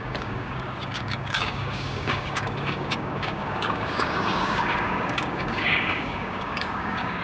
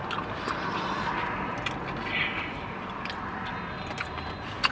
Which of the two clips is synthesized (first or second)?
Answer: first